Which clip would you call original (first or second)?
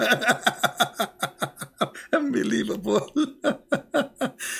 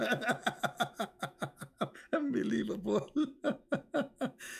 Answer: first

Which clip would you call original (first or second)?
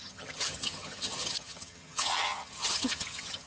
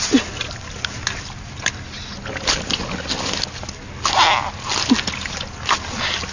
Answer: second